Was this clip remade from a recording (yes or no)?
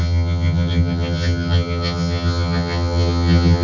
yes